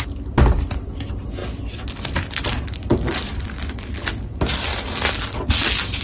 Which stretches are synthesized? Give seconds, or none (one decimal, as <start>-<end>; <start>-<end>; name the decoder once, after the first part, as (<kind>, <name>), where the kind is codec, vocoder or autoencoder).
none